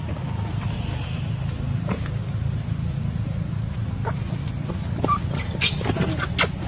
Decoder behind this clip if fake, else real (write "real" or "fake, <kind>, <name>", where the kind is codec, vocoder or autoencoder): real